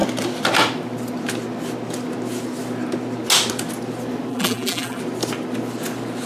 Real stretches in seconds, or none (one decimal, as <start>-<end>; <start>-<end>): 0.0-4.3; 5.0-6.3